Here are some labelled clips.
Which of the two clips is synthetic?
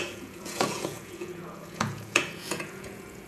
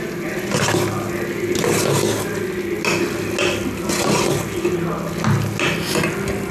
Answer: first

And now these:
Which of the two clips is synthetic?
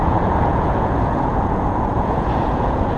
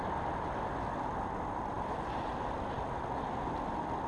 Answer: first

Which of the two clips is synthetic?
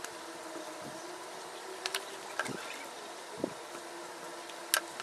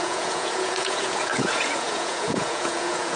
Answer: second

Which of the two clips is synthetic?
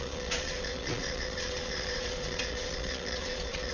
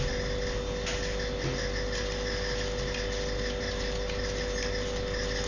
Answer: first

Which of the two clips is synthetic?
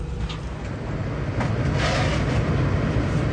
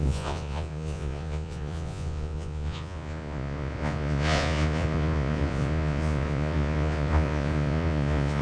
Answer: second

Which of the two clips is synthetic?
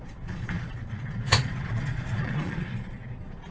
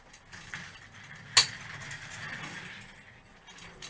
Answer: first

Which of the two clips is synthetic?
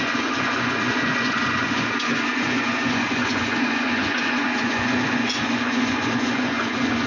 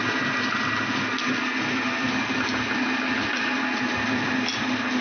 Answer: first